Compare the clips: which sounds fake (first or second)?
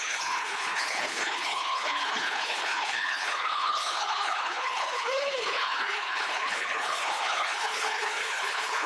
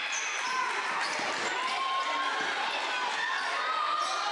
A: first